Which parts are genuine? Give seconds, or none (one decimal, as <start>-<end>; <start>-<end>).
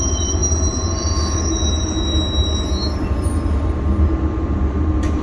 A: 0.0-5.2